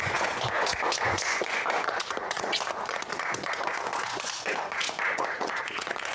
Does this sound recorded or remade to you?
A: remade